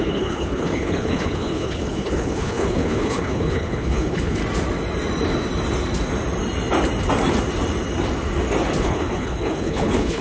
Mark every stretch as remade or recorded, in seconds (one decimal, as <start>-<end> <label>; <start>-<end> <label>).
0.0-4.4 remade; 4.4-8.8 recorded; 8.8-10.2 remade